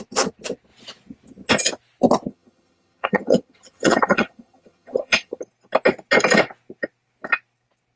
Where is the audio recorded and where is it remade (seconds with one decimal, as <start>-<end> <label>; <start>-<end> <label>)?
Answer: 0.0-2.3 recorded; 2.3-5.4 remade; 5.4-8.0 recorded